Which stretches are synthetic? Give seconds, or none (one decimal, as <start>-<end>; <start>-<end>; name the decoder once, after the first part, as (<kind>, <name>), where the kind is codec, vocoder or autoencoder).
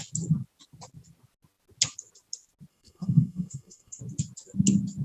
2.7-4.0 (codec, SNAC)